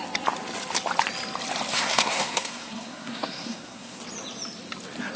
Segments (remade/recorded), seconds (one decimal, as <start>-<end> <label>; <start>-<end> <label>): 0.0-1.7 recorded; 1.7-4.0 remade; 4.0-5.2 recorded